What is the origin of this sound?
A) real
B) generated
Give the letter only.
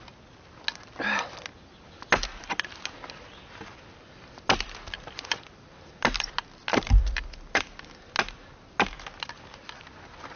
A